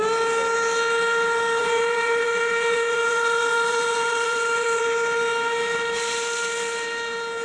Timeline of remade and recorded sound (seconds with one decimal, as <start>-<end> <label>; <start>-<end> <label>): 0.0-1.6 recorded; 1.6-4.8 remade; 4.8-7.4 recorded